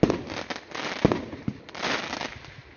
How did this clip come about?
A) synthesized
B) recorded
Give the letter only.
B